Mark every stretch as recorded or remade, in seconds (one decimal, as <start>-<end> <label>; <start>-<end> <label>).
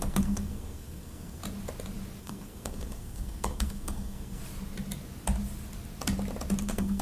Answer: 0.0-1.4 remade; 1.4-2.2 recorded; 2.2-4.4 remade; 4.4-6.6 recorded; 6.6-7.0 remade